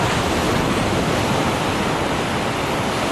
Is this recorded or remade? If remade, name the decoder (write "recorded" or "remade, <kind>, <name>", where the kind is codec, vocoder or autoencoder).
recorded